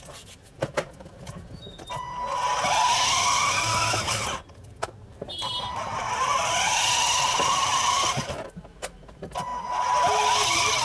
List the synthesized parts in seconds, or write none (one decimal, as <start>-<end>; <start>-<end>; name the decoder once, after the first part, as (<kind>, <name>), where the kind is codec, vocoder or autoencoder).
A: 4.6-8.6 (vocoder, BigVGAN v2)